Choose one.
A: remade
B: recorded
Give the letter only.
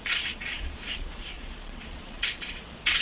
A